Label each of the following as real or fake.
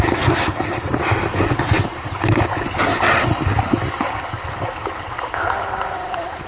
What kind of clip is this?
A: real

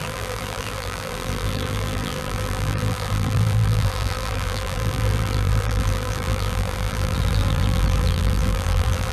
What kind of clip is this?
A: fake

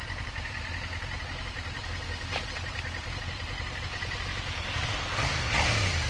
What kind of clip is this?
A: real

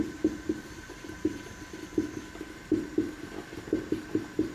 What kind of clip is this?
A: fake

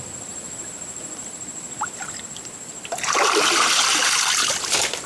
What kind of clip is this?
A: fake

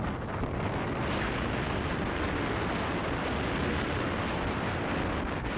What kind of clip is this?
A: real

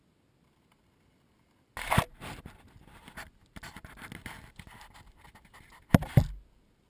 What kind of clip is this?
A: real